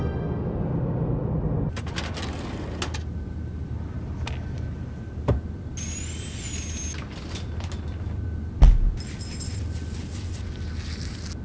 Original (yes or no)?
yes